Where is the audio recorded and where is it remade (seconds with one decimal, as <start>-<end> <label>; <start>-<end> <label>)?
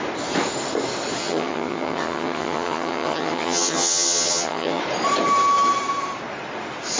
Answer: 0.0-1.2 recorded; 1.2-4.8 remade; 4.8-7.0 recorded